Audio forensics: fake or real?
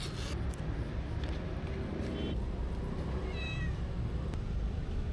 real